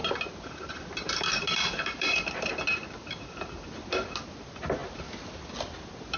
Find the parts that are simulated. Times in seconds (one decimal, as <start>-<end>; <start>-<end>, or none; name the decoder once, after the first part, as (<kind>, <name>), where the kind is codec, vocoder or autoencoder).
0.0-3.7 (vocoder, BigVGAN v2)